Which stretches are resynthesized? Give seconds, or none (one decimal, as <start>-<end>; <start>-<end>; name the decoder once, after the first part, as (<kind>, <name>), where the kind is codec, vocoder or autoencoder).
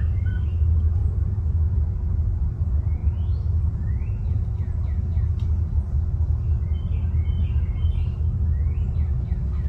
none